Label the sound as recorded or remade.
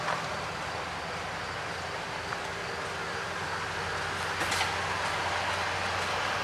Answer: recorded